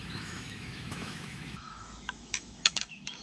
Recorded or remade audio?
remade